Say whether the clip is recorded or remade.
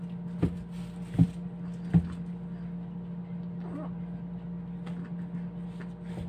recorded